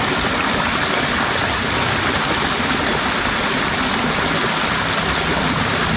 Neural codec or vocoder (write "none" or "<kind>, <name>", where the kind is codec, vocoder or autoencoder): none